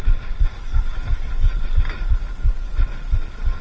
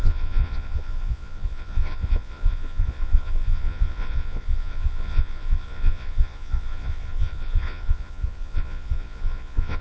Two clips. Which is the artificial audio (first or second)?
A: second